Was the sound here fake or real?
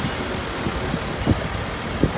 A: real